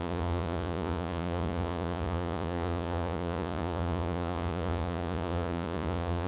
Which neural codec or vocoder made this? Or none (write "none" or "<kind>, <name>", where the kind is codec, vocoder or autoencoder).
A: vocoder, Vocos